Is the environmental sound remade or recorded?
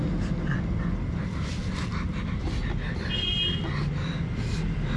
recorded